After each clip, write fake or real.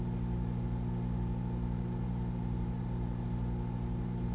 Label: real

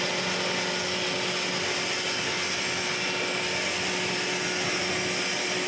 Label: real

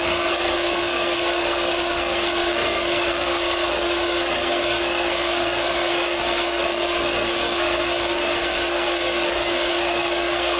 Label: fake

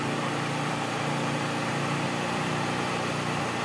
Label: fake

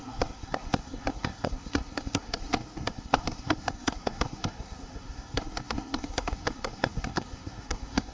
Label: fake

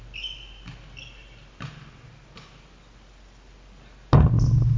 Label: real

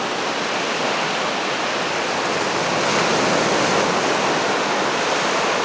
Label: real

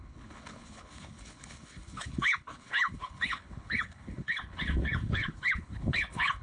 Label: fake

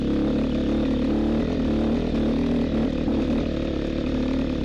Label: real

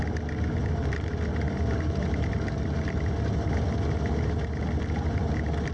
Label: real